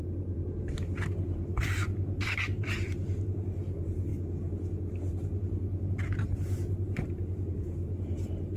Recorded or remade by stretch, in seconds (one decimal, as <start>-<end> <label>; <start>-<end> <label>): 0.0-4.1 remade; 4.1-5.9 recorded; 5.9-8.6 remade